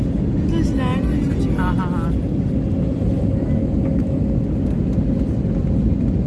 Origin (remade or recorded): recorded